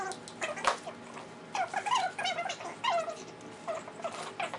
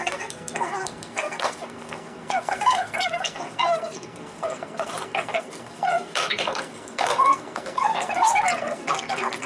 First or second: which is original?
first